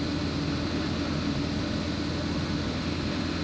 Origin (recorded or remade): recorded